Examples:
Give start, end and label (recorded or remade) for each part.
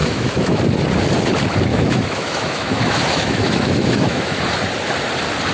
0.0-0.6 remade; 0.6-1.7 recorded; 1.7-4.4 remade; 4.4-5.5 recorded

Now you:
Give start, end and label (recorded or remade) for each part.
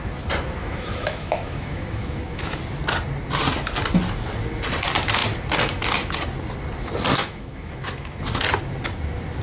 0.0-0.6 recorded; 0.6-2.5 remade; 2.5-7.2 recorded; 7.2-8.2 remade; 8.2-9.4 recorded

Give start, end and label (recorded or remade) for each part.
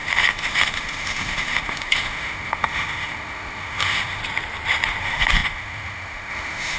0.0-4.2 remade; 4.2-5.0 recorded; 5.0-6.8 remade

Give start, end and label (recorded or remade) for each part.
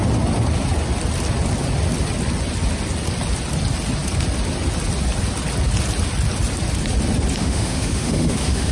0.0-7.4 recorded; 7.4-8.7 remade